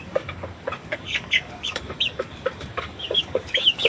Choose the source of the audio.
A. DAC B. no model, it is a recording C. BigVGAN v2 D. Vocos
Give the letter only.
A